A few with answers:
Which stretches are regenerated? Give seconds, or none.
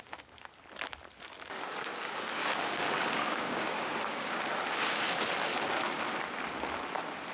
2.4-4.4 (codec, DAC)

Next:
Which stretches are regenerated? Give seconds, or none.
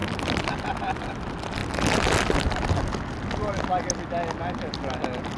0.0-0.6 (vocoder, BigVGAN v2)